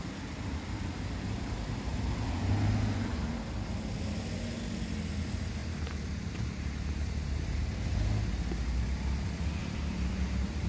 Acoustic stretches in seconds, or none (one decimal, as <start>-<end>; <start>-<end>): 0.0-5.6; 7.4-9.6